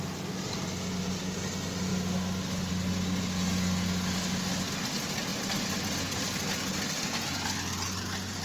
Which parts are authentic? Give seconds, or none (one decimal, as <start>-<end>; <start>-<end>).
0.0-8.4